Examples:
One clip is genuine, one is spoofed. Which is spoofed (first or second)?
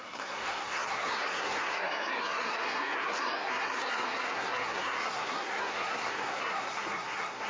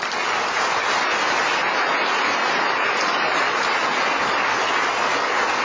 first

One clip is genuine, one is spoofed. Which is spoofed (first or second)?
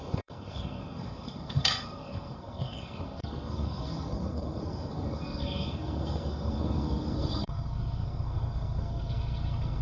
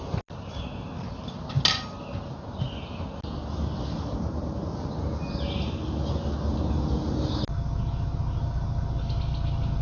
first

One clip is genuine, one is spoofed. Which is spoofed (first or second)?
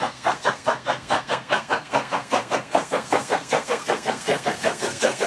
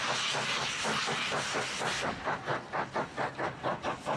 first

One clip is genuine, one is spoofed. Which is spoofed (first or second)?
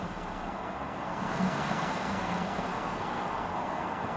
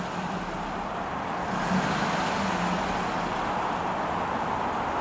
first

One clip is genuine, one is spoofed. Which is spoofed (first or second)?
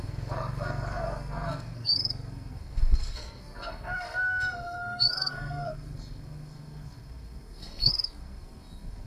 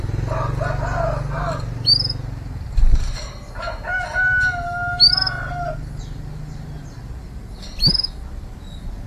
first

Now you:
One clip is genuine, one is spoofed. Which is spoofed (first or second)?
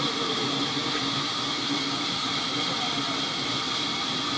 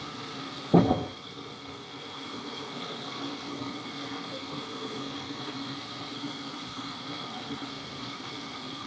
second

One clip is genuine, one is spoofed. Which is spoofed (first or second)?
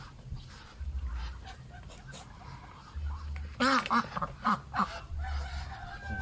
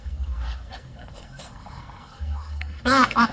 second